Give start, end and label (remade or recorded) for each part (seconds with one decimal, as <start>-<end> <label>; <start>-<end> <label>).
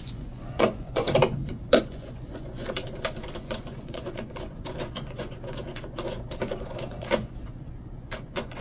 0.0-2.8 remade; 2.8-3.4 recorded; 3.4-8.6 remade